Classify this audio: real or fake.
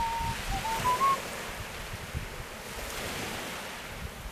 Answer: real